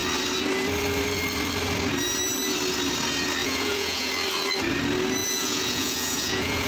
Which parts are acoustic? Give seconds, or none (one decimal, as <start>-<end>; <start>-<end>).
0.0-3.4; 4.1-5.2

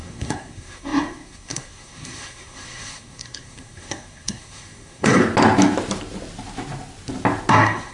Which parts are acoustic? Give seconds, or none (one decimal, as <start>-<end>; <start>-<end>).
5.2-7.5

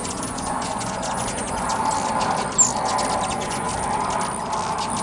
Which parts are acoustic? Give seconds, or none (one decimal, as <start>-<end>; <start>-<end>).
1.7-3.3; 3.7-5.0

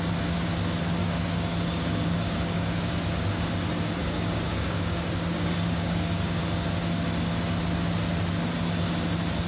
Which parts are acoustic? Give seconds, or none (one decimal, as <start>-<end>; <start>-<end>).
0.0-1.0; 2.9-4.0; 6.4-9.5

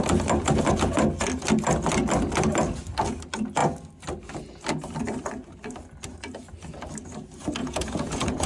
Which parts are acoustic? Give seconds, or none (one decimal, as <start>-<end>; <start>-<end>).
0.0-7.6

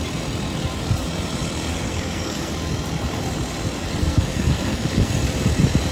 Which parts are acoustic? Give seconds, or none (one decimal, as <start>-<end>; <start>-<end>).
0.0-1.7; 2.5-4.0; 5.1-5.9

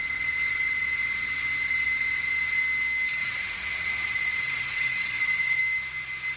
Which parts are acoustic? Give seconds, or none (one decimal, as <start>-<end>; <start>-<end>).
2.6-3.2; 5.6-6.4